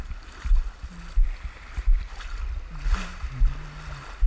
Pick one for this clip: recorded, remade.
recorded